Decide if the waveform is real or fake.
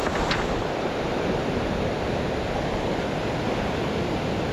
real